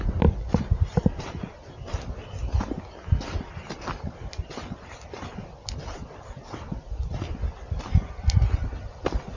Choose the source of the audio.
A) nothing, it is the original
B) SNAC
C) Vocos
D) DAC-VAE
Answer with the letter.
A